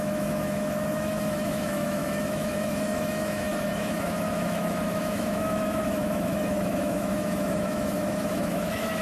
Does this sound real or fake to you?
fake